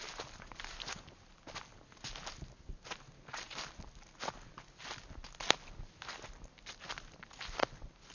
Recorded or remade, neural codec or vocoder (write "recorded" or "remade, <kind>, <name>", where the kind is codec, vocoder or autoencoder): recorded